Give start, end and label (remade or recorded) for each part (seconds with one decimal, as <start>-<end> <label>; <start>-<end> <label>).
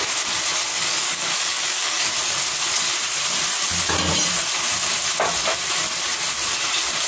0.0-0.7 recorded; 0.7-2.1 remade; 2.1-7.1 recorded